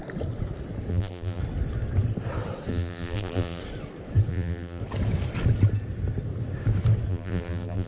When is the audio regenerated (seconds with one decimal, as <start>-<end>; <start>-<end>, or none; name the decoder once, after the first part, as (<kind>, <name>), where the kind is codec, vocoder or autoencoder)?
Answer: 0.9-1.4 (vocoder, BigVGAN v2); 2.7-3.6; 4.3-4.8; 7.1-7.9